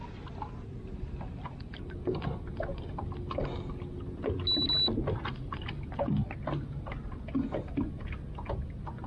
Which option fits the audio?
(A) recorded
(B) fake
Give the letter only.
A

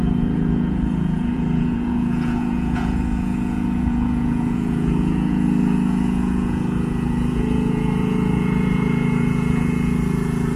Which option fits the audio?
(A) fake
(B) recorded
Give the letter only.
A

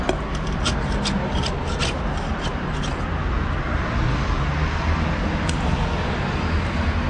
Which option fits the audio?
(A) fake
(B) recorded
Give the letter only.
B